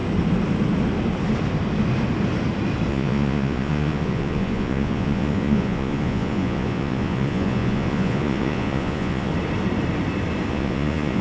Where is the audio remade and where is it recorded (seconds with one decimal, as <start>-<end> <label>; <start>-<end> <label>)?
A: 0.0-2.9 recorded; 2.9-9.3 remade; 9.3-10.5 recorded; 10.5-11.2 remade